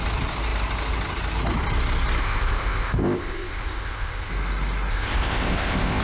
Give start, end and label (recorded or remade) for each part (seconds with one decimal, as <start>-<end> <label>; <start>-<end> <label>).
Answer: 0.0-2.2 recorded; 2.2-4.3 remade; 4.3-4.9 recorded; 4.9-6.0 remade